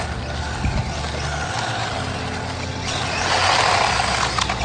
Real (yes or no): yes